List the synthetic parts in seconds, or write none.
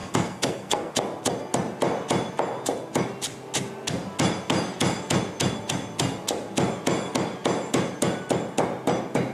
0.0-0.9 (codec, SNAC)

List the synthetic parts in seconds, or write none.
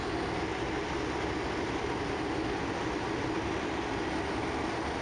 none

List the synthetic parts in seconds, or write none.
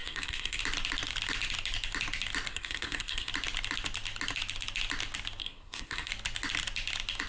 0.0-0.6 (codec, SNAC); 2.5-3.3; 5.4-6.1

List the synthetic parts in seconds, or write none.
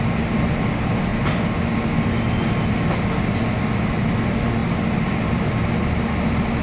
none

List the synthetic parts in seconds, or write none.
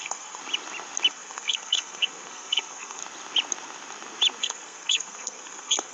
0.0-0.4 (codec, SNAC); 1.1-3.0; 4.4-5.9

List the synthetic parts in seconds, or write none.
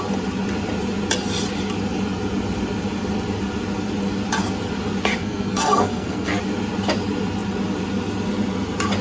5.2-6.4 (codec, SNAC)